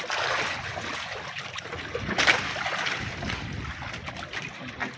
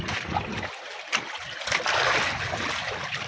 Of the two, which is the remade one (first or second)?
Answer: second